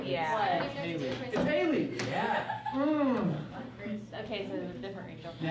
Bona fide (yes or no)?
yes